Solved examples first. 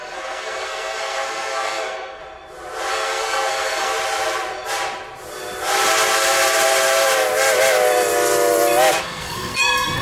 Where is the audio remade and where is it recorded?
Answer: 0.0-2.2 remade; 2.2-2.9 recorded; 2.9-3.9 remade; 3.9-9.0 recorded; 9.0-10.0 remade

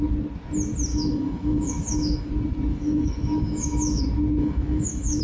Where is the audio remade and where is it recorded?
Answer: 0.0-0.9 recorded; 0.9-2.3 remade; 2.3-2.7 recorded; 2.7-4.0 remade; 4.0-4.4 recorded; 4.4-5.2 remade

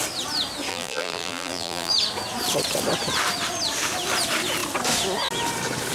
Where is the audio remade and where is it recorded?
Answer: 0.0-0.7 recorded; 0.7-1.9 remade; 1.9-5.9 recorded